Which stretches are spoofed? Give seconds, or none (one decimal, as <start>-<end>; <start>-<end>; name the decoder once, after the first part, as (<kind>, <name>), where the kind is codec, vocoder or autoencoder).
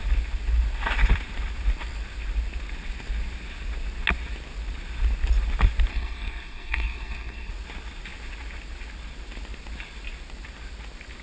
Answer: 5.9-7.5 (codec, SNAC)